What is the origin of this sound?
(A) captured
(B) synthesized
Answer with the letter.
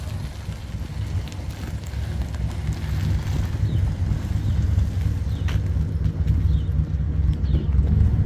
A